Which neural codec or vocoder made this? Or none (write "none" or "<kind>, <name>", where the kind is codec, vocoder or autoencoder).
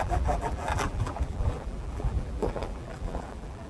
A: vocoder, BigVGAN v2